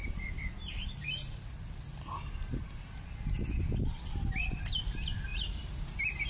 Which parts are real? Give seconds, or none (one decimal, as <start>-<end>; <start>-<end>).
0.7-5.3

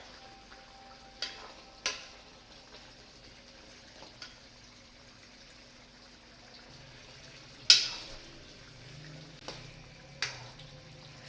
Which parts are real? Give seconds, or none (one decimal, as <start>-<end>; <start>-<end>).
0.0-2.3; 5.7-11.3

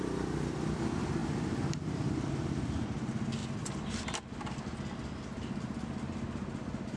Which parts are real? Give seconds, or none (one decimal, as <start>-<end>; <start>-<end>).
0.0-1.2; 2.3-3.4; 4.6-7.0

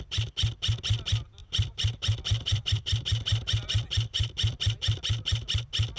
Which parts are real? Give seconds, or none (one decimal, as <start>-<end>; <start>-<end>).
0.0-1.4; 5.0-6.0

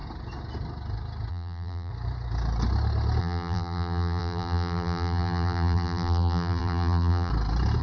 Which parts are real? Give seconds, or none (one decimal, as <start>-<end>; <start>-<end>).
0.0-1.3; 1.9-3.2; 7.3-7.8